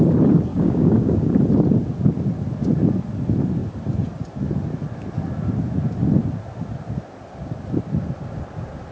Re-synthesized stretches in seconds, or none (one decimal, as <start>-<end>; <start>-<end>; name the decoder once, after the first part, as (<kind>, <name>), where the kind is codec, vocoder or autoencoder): 0.5-1.3 (codec, DAC)